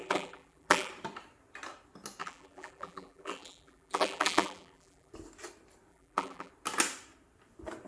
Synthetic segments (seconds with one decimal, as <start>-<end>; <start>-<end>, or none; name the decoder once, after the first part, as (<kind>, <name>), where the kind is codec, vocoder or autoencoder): 0.0-0.9 (vocoder, BigVGAN v2); 2.2-5.1; 5.9-6.5